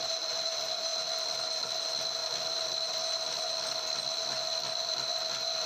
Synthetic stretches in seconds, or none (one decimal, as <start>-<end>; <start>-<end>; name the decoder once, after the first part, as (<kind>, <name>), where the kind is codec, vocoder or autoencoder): none